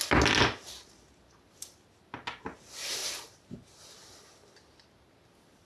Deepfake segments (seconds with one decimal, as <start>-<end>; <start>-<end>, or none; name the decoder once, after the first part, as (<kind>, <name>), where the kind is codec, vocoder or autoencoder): none